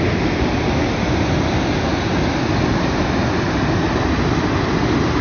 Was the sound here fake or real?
real